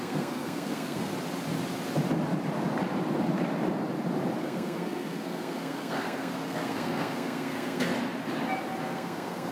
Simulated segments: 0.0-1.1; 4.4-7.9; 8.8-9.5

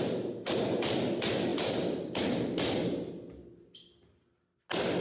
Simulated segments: none

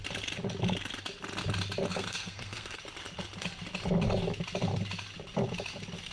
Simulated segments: 1.9-2.8

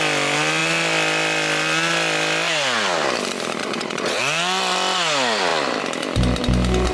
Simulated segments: 3.6-4.2

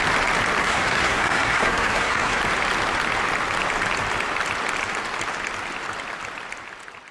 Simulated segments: 0.6-2.4

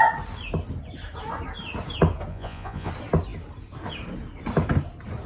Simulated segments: 2.3-2.9

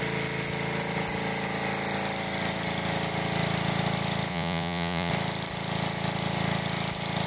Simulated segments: 4.3-5.1

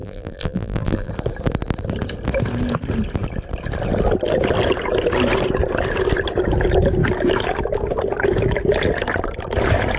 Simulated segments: 0.0-1.1